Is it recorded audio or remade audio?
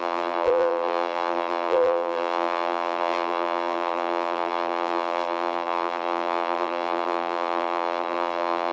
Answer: remade